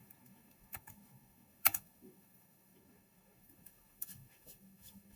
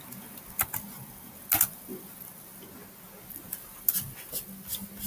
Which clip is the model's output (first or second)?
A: first